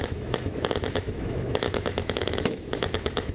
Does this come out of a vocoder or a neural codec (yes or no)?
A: yes